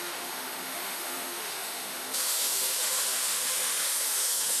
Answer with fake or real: fake